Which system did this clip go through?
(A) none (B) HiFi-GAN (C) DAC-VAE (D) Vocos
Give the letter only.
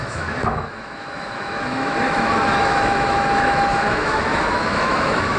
C